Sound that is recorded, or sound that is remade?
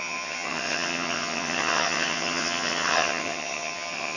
remade